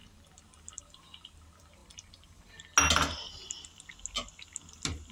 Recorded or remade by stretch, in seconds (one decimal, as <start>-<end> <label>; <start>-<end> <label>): 0.0-5.1 recorded